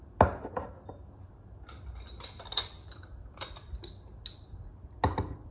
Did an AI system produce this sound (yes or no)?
no